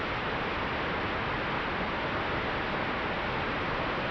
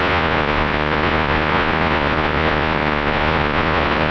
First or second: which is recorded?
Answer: first